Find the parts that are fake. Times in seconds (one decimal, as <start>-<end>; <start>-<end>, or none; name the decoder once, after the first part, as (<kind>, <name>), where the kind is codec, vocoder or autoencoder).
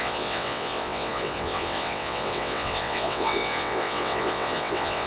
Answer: 0.0-5.1 (vocoder, WaveNeXt)